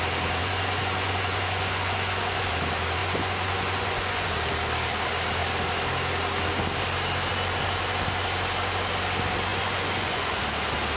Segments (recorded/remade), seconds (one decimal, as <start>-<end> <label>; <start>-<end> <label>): 0.0-0.4 recorded; 0.4-2.5 remade; 2.5-3.0 recorded; 3.0-4.3 remade; 4.3-9.5 recorded; 9.5-10.4 remade; 10.4-11.0 recorded